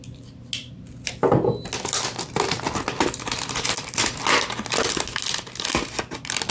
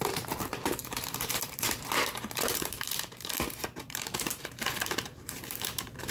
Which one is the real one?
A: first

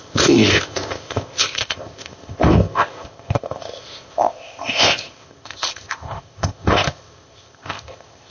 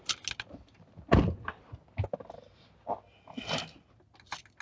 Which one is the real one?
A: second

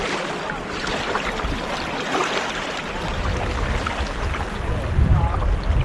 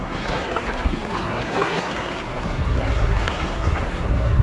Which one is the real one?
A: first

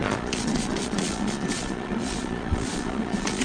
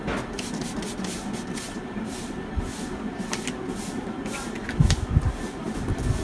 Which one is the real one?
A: second